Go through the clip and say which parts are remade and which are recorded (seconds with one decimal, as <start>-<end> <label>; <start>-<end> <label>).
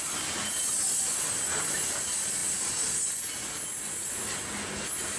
0.0-5.2 recorded